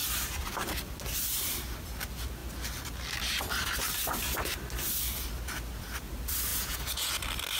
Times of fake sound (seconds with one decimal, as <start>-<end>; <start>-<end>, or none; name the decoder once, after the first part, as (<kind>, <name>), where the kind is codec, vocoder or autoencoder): 6.5-7.1 (vocoder, Vocos)